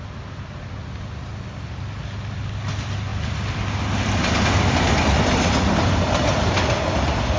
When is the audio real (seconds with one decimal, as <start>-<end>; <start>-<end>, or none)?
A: 0.0-7.4